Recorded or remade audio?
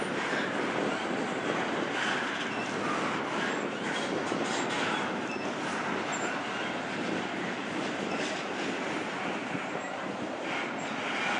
recorded